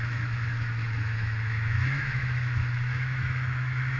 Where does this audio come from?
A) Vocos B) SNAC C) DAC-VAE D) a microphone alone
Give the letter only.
C